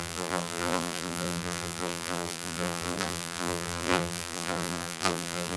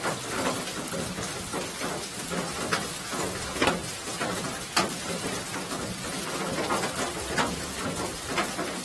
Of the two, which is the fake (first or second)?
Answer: first